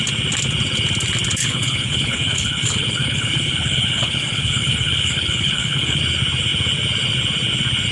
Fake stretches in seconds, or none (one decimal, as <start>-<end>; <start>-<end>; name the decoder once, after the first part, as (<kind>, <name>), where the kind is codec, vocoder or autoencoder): 1.4-6.0 (codec, HILCodec)